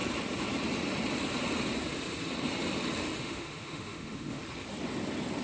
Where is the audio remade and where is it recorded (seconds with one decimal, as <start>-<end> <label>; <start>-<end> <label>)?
0.0-3.2 recorded; 3.2-4.4 remade; 4.4-5.4 recorded